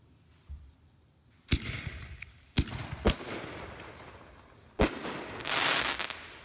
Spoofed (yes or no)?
no